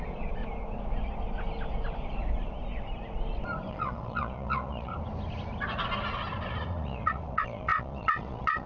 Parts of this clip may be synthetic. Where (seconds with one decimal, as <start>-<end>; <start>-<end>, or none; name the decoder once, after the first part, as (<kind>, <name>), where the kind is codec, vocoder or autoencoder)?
0.0-0.4 (vocoder, Vocos); 3.7-4.9; 6.5-8.7